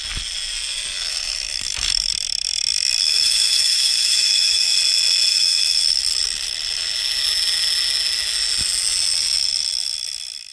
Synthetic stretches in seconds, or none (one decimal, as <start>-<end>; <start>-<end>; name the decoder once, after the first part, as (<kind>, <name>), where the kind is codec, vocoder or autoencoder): 1.1-2.1 (autoencoder, DAC-VAE); 3.0-4.8; 5.3-6.0